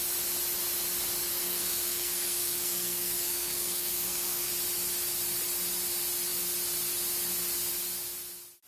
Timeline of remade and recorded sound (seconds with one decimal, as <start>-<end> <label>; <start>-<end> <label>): 0.0-1.3 recorded; 1.3-4.5 remade; 4.5-8.7 recorded